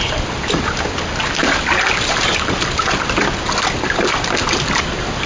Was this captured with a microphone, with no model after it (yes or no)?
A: yes